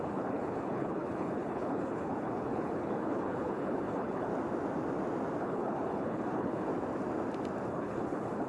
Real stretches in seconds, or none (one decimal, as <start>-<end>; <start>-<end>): 4.3-5.4; 6.7-7.7